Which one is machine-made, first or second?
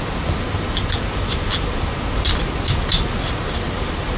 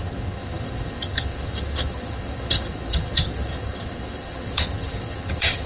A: second